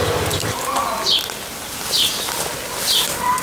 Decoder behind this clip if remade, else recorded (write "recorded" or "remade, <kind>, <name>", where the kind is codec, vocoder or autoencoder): recorded